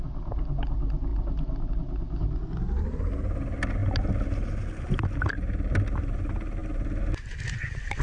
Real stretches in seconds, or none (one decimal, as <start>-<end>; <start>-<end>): 0.0-8.0